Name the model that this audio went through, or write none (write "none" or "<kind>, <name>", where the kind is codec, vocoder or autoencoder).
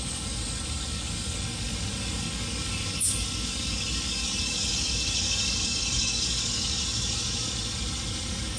codec, DAC